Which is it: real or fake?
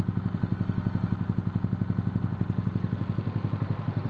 real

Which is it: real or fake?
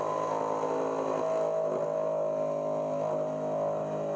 real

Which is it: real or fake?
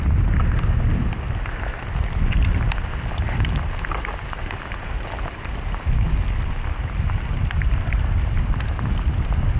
real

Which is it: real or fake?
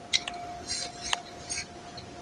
real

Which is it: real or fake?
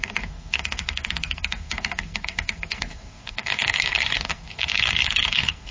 fake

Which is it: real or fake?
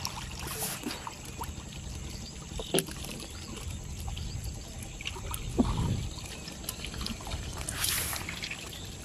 real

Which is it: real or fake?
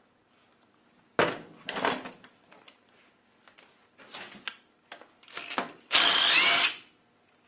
real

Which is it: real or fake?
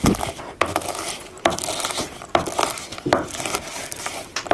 real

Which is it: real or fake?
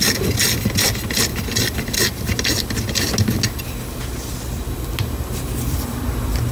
real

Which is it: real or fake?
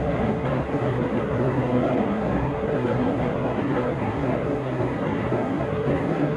fake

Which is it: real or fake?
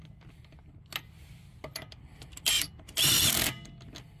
real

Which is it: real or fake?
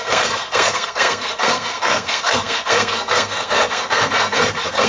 fake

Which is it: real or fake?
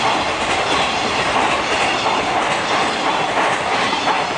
real